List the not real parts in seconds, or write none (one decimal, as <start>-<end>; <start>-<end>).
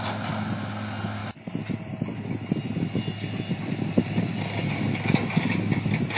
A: none